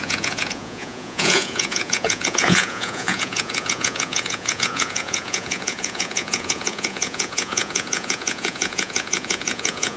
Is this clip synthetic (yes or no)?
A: yes